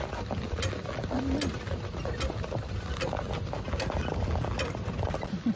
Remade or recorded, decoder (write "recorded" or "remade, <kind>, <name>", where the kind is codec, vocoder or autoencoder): recorded